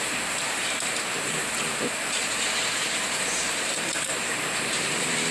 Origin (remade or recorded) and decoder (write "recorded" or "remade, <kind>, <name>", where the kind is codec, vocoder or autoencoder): remade, vocoder, BigVGAN v2